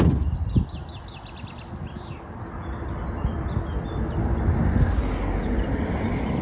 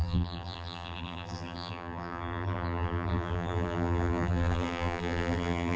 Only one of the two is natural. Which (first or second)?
first